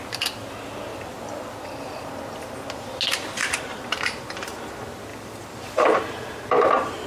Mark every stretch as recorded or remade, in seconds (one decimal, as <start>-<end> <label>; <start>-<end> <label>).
0.0-3.4 recorded; 3.4-4.6 remade; 4.6-5.1 recorded; 5.1-7.1 remade